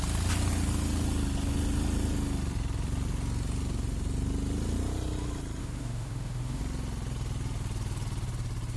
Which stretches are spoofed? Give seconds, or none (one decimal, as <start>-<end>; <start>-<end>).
5.6-6.6